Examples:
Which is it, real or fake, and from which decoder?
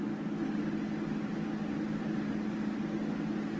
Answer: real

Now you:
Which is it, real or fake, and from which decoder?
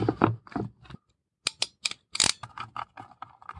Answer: real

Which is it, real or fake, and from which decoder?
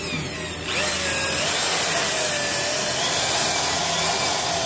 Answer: real